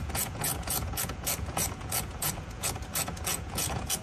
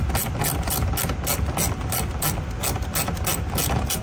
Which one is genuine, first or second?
second